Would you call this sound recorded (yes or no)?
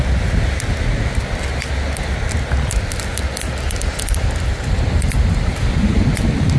yes